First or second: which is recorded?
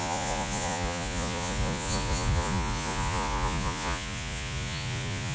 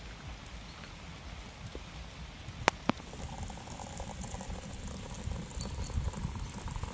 second